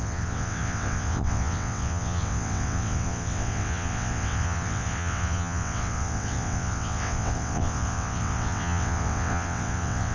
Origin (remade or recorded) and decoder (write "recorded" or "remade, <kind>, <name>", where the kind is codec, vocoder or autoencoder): remade, vocoder, WaveNeXt